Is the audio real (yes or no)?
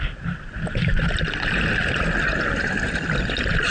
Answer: yes